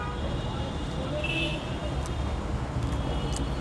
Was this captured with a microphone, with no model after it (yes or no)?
yes